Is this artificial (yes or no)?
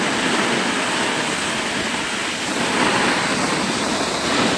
no